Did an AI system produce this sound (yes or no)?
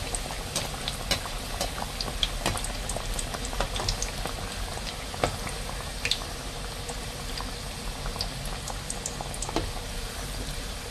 no